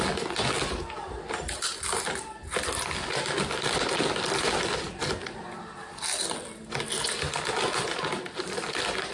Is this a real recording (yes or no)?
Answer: yes